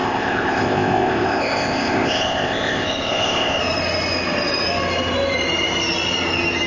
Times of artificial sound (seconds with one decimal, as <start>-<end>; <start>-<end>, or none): 0.0-3.6